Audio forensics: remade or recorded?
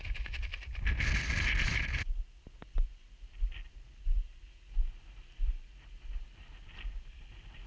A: recorded